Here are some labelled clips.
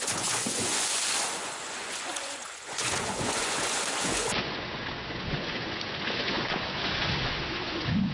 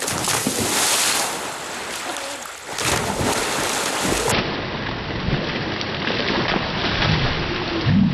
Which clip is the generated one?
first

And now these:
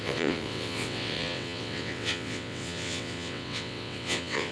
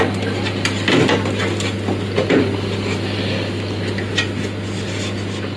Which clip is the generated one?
first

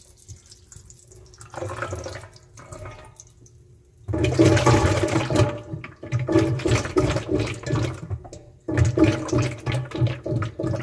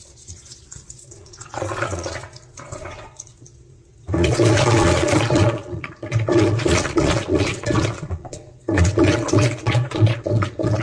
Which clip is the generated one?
second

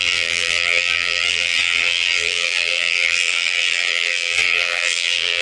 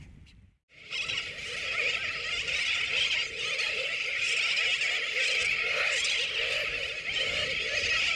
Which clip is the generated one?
first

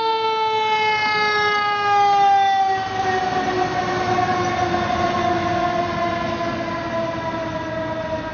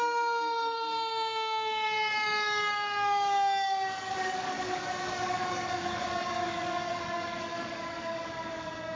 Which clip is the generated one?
second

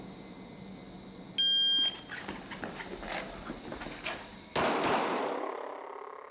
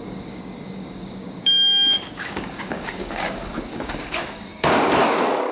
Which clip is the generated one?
second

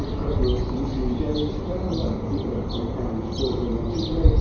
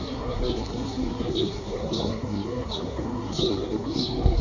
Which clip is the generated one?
second